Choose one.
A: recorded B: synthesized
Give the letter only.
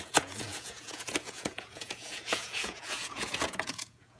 B